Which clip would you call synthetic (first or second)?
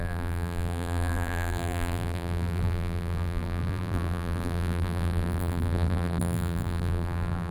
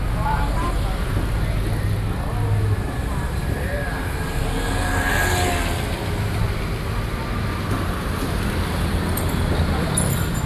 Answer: first